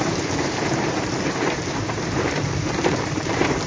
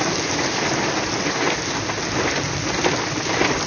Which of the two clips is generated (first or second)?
first